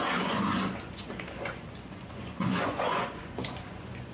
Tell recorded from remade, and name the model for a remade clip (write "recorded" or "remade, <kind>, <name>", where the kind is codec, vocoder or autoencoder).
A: remade, vocoder, Vocos